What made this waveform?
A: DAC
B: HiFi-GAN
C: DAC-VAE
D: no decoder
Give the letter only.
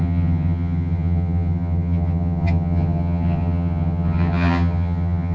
B